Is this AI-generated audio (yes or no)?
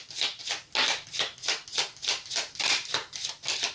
no